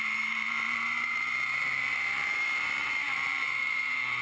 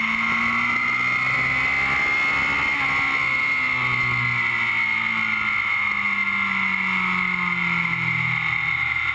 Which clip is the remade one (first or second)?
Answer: first